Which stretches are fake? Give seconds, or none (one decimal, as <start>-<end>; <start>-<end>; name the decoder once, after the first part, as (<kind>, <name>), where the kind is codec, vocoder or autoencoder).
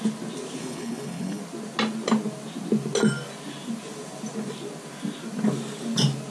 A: 0.6-1.4 (codec, HILCodec)